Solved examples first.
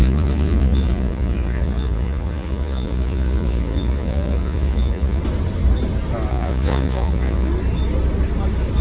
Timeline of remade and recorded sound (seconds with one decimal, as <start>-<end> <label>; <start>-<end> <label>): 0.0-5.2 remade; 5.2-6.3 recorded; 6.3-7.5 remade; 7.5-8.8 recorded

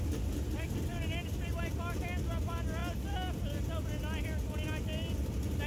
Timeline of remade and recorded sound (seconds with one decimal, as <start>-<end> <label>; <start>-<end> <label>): 0.0-0.9 recorded; 0.9-2.0 remade; 2.0-5.7 recorded

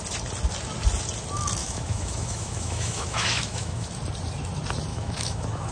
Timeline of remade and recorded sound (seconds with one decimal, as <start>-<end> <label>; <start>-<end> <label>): 0.0-1.6 recorded; 1.6-3.9 remade; 3.9-4.9 recorded; 4.9-5.7 remade

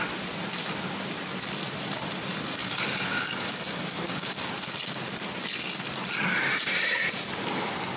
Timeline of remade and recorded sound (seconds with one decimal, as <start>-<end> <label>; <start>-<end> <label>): 0.0-2.6 recorded; 2.6-4.5 remade; 4.5-8.0 recorded

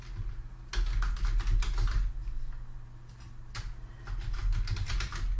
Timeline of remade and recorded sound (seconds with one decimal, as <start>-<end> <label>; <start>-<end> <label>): 0.0-5.4 recorded

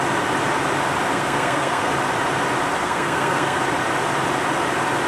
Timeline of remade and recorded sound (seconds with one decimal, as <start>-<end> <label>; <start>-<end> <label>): 0.0-1.1 recorded; 1.1-1.9 remade; 1.9-2.8 recorded; 2.8-3.6 remade; 3.6-5.1 recorded

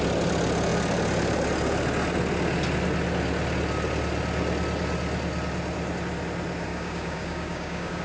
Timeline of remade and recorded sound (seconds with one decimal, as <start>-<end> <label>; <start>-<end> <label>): 0.0-6.7 recorded; 6.7-8.0 remade